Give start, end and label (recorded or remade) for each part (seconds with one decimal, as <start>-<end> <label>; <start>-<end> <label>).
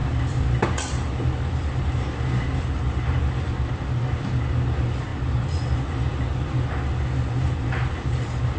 0.0-8.6 recorded